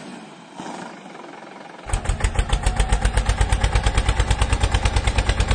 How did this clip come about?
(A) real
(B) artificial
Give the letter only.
A